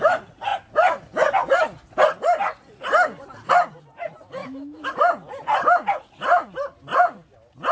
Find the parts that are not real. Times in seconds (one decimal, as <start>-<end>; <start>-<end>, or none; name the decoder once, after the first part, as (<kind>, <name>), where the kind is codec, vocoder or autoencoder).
4.4-4.9 (autoencoder, DAC-VAE)